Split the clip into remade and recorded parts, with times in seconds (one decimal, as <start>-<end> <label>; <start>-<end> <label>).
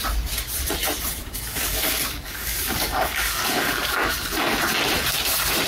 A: 0.0-1.2 recorded; 1.2-4.4 remade; 4.4-5.7 recorded